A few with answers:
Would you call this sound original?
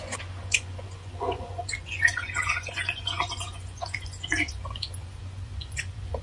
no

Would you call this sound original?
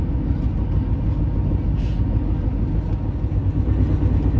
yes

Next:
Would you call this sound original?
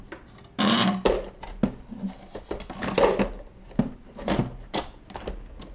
yes